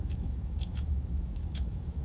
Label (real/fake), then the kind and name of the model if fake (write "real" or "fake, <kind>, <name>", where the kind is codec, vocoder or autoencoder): fake, autoencoder, DAC-VAE